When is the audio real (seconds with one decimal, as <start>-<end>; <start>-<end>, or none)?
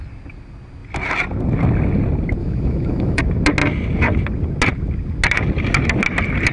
0.0-2.4; 3.2-6.5